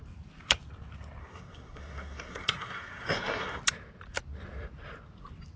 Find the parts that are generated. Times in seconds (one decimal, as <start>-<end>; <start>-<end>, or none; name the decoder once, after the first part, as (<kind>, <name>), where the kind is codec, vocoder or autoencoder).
1.2-3.6 (codec, SNAC)